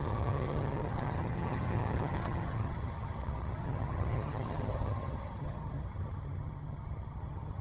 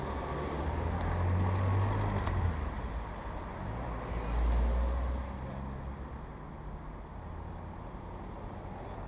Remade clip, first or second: first